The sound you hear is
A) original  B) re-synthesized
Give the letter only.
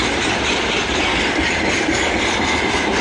A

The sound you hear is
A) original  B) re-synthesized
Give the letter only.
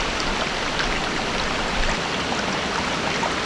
A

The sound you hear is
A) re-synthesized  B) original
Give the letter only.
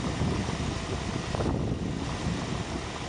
B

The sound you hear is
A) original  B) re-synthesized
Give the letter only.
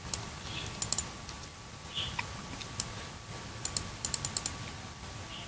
A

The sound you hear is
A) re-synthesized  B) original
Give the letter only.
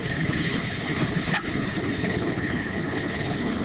A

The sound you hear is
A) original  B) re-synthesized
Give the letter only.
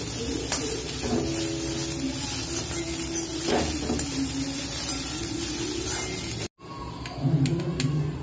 A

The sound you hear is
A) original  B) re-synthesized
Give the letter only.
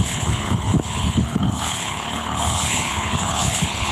B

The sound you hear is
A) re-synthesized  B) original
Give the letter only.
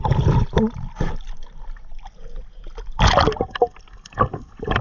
B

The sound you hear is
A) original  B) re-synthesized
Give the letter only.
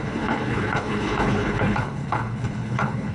B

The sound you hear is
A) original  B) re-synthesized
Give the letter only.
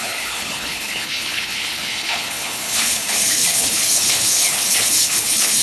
B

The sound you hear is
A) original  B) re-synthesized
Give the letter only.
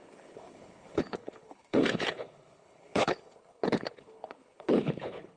B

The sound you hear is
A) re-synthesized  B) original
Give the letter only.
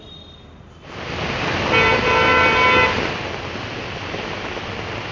B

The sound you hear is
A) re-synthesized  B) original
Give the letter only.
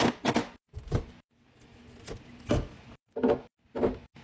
B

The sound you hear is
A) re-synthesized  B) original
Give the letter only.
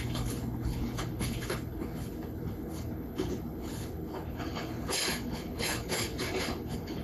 A